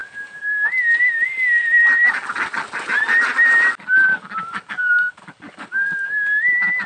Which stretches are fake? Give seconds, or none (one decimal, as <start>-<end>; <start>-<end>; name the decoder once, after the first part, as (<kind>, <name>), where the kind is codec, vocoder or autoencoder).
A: 0.0-0.5 (codec, DAC); 4.1-6.1